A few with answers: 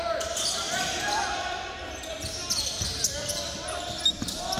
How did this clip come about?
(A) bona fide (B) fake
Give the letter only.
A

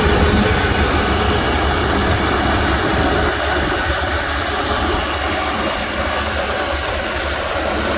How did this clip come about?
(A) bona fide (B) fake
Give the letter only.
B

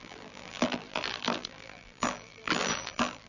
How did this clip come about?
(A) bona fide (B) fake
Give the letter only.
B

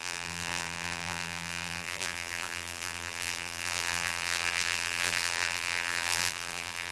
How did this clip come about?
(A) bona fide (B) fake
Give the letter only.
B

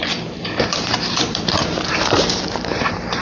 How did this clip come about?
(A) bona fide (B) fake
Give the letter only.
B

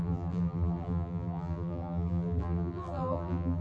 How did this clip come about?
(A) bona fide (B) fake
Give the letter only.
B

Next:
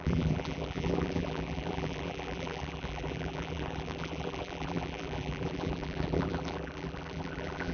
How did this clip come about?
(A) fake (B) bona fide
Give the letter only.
A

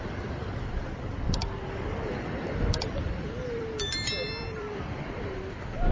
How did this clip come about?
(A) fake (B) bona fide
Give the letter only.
A